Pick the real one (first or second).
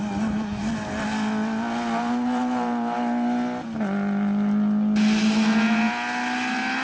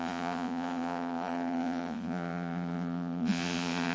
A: first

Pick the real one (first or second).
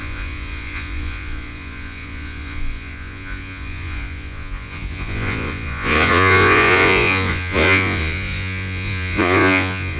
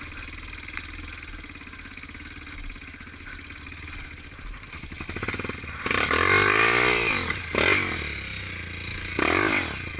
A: second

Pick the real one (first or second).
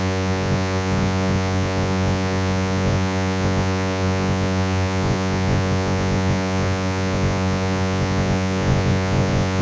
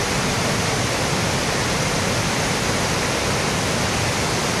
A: second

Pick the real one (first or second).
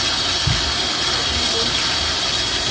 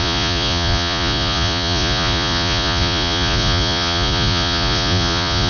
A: first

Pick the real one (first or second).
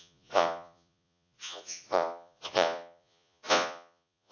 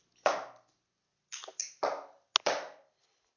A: second